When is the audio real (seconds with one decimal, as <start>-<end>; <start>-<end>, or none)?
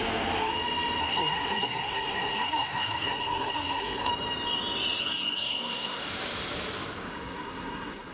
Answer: 0.0-1.0; 4.1-5.0; 6.0-7.1